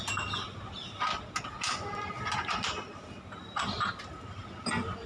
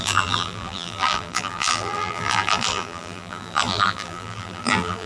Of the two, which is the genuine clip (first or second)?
first